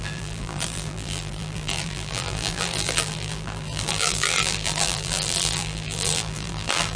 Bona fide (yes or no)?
no